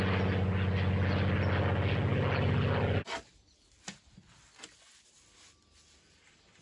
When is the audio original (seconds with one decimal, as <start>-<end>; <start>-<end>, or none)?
0.0-6.6